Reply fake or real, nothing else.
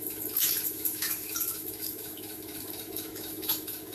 fake